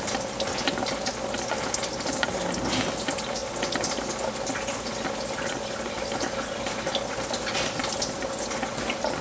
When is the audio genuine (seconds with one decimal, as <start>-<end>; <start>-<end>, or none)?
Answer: 0.0-9.2

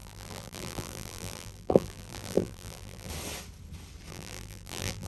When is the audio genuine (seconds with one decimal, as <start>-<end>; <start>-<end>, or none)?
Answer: 3.1-4.1

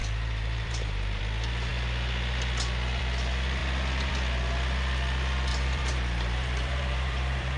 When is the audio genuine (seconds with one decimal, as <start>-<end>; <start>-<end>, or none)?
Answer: 1.2-5.5

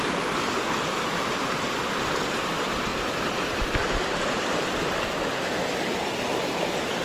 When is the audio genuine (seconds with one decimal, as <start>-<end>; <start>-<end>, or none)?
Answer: 0.0-2.9; 5.3-7.0

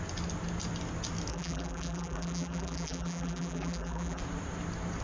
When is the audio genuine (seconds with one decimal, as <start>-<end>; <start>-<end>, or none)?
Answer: 0.0-1.3; 4.2-5.0

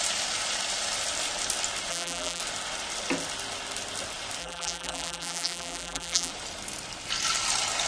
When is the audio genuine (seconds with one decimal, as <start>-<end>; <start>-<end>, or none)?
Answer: 0.0-1.9; 2.4-4.4; 6.3-7.9

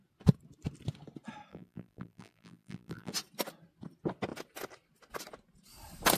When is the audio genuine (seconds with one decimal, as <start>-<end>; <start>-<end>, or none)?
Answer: 0.0-1.5; 3.1-6.2